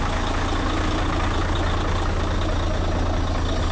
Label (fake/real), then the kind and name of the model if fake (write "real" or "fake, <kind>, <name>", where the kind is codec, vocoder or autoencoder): real